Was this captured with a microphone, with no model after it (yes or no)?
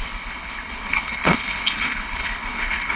no